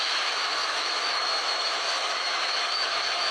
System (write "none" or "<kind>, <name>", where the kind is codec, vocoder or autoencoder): autoencoder, DAC-VAE